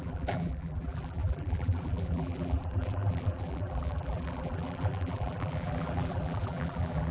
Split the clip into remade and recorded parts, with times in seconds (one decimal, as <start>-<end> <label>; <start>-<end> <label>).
0.0-7.1 remade